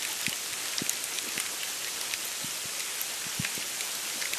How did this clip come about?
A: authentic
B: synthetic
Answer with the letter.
A